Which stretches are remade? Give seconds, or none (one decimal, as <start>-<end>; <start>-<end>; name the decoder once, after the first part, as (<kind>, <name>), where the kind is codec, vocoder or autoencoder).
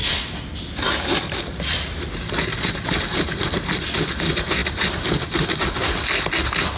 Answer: none